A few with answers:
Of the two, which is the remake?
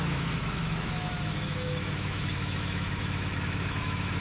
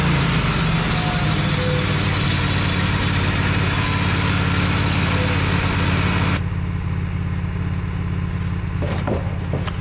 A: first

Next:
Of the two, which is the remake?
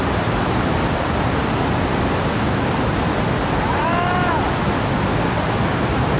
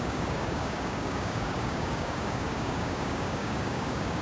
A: second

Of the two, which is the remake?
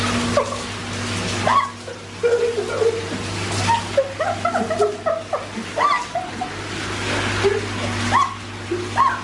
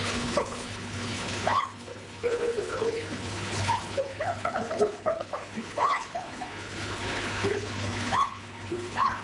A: second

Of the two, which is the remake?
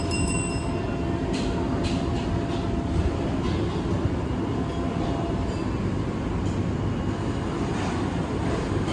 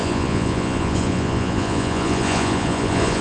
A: second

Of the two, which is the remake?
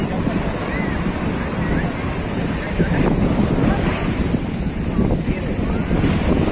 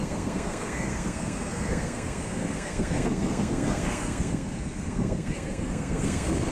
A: second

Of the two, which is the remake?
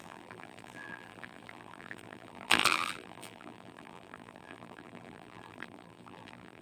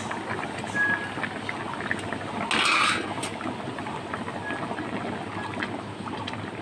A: first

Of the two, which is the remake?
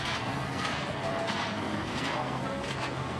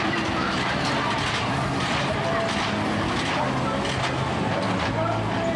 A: first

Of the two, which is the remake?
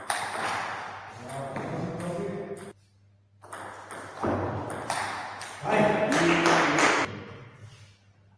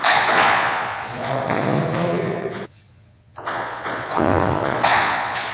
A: second